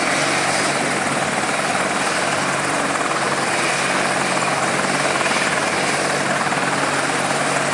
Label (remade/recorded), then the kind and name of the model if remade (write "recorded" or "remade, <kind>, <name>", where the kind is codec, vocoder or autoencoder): recorded